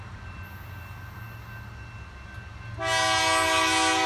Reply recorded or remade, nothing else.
recorded